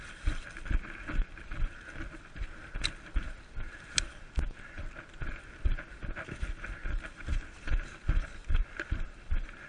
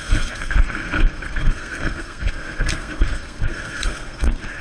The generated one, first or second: second